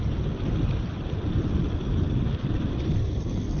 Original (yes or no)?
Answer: no